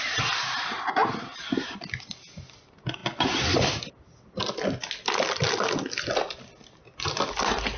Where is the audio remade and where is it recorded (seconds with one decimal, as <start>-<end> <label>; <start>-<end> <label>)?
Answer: 0.0-7.8 recorded